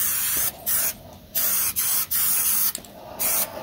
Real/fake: real